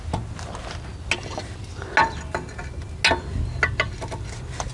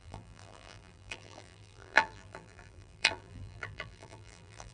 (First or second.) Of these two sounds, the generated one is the second